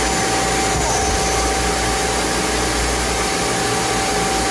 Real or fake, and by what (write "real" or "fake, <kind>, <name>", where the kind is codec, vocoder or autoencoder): real